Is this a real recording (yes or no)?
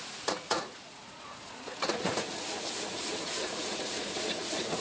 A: no